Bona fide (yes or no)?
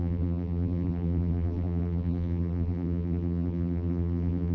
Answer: no